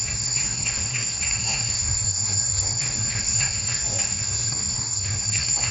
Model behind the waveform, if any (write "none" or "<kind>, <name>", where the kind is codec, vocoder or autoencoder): codec, SNAC